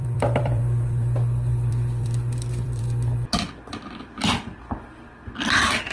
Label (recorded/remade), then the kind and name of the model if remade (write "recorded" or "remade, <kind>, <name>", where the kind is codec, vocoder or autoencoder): remade, vocoder, BigVGAN v2